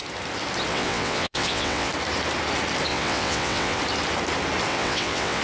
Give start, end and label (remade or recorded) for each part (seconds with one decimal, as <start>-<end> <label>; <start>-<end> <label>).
0.0-0.7 recorded; 0.7-1.9 remade; 1.9-2.9 recorded; 2.9-3.8 remade; 3.8-4.7 recorded; 4.7-5.4 remade